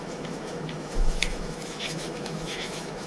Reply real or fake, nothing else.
fake